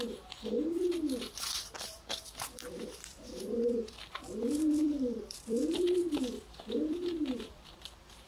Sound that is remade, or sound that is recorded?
remade